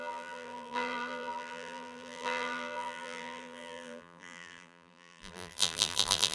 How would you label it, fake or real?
fake